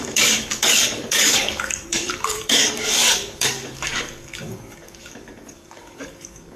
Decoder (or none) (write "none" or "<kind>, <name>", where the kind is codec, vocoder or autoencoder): codec, DAC